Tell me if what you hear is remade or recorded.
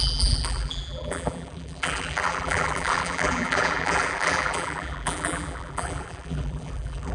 remade